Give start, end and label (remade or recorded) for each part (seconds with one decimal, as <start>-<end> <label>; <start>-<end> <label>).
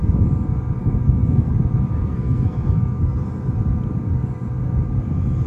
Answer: 0.0-0.8 recorded; 0.8-1.5 remade; 1.5-2.0 recorded; 2.0-3.2 remade; 3.2-5.5 recorded